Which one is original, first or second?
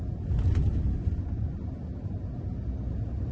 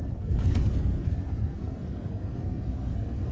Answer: first